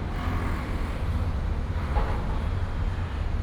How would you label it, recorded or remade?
recorded